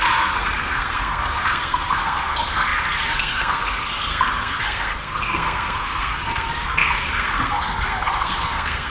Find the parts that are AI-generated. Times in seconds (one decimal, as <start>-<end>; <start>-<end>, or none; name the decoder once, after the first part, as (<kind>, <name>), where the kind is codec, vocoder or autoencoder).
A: 0.0-8.9 (codec, SNAC)